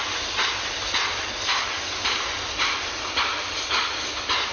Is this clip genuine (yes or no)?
yes